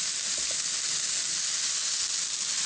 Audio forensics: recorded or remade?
recorded